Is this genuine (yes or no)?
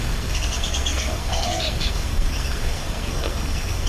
no